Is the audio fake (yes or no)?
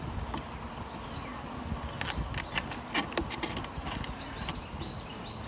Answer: no